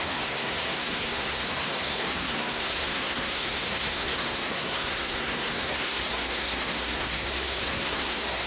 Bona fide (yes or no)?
no